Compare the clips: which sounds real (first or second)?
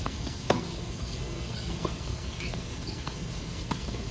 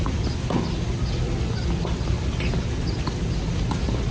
second